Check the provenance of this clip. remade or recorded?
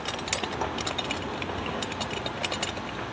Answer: recorded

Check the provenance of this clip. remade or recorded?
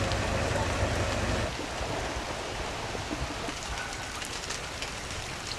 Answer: recorded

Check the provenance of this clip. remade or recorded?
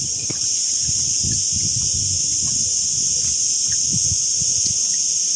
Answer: recorded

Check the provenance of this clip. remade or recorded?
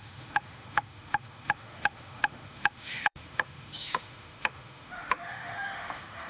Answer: remade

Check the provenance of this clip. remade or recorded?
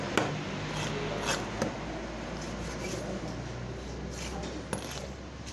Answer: recorded